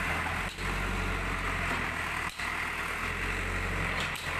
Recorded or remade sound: recorded